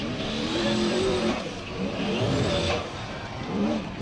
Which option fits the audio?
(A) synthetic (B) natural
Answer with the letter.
A